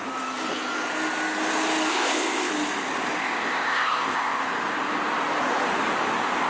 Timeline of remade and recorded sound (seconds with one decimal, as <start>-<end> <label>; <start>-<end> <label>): 0.0-1.9 recorded; 1.9-2.5 remade; 2.5-3.2 recorded; 3.2-4.4 remade; 4.4-6.5 recorded